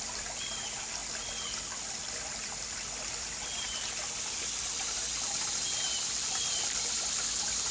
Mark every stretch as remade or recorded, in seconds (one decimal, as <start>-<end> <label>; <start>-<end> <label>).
0.0-7.7 remade